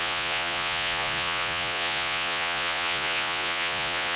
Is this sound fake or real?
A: fake